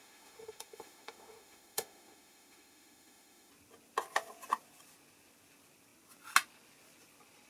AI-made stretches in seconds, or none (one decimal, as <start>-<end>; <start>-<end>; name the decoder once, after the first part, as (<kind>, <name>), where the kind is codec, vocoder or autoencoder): 0.0-3.5 (autoencoder, DAC-VAE)